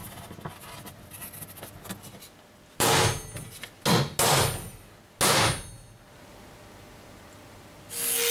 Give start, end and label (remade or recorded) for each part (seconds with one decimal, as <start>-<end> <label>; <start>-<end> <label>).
0.0-8.3 recorded